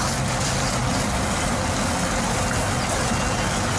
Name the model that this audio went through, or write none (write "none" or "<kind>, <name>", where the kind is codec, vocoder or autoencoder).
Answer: none